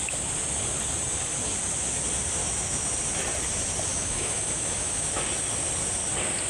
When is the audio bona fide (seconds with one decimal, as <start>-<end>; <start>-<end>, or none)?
0.0-2.4; 3.0-3.9; 5.2-6.5